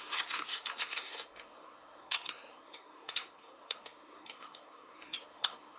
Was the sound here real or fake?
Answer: fake